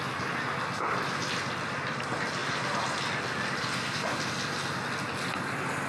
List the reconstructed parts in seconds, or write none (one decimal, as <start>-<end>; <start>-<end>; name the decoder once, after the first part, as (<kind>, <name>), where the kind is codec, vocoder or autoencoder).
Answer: none